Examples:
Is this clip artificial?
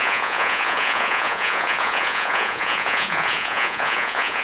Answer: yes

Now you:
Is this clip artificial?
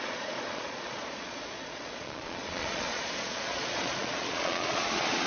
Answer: yes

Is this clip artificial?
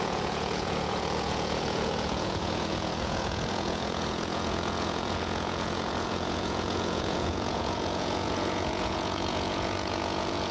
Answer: yes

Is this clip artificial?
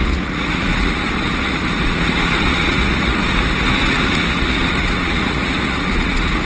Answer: yes